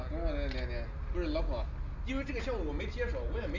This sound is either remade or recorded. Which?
recorded